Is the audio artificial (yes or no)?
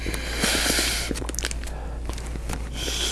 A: no